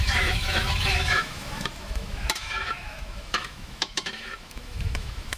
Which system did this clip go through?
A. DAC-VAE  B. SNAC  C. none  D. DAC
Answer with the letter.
A